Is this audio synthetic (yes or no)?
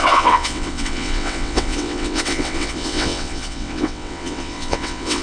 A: yes